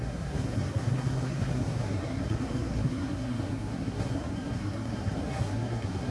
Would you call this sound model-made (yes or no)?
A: yes